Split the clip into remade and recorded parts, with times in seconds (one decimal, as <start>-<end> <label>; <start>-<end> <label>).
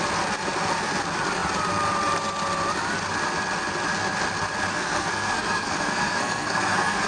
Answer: 0.0-4.7 recorded; 4.7-7.1 remade